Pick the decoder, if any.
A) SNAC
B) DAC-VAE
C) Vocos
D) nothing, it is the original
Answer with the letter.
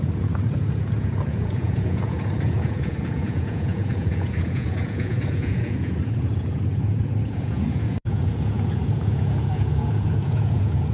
C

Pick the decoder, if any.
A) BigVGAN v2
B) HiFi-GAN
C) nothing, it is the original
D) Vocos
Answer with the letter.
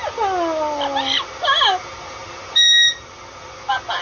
C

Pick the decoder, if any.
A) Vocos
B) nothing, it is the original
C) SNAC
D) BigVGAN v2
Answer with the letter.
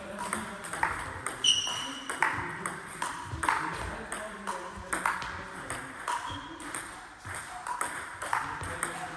B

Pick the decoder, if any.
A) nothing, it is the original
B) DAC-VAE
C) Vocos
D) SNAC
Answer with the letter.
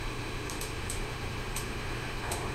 B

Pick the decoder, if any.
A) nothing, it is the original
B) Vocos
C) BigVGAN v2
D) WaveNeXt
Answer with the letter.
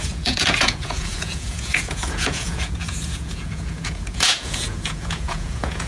B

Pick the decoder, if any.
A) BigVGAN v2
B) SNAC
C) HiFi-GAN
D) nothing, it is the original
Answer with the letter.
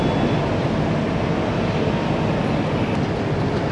D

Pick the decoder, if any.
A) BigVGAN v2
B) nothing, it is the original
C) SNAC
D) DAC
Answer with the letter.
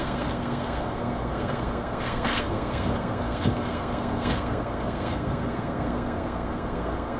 C